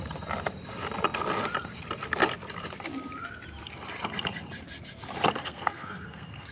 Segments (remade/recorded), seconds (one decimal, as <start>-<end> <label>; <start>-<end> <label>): 0.0-5.4 recorded; 5.4-6.5 remade